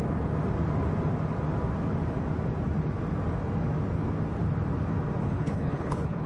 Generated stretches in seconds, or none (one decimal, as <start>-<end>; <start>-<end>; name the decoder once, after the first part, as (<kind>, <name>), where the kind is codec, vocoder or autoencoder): 5.2-6.3 (codec, HILCodec)